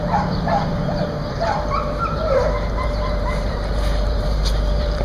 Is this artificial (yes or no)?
yes